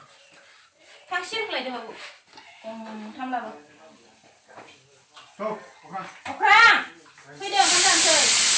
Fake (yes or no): no